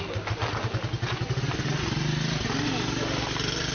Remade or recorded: recorded